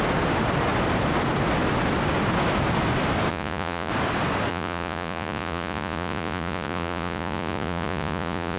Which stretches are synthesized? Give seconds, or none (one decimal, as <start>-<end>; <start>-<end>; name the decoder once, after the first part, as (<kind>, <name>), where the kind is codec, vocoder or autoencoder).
3.3-3.9 (vocoder, Vocos); 4.5-8.6